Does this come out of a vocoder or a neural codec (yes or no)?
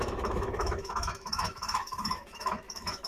yes